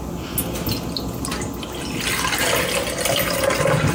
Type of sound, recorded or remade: recorded